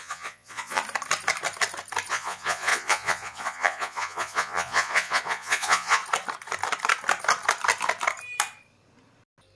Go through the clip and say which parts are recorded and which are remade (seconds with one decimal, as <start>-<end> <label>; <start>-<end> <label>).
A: 0.0-0.8 remade; 0.8-2.1 recorded; 2.1-6.0 remade; 6.0-9.6 recorded